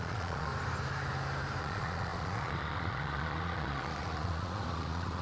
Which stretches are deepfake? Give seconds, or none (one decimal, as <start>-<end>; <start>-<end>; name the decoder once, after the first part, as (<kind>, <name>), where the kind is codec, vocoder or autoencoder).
0.0-0.5 (vocoder, Vocos); 1.6-5.2